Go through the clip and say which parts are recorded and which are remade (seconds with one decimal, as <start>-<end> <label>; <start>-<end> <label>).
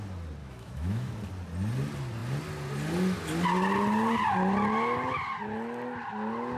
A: 0.0-0.4 recorded; 0.4-1.1 remade; 1.1-6.6 recorded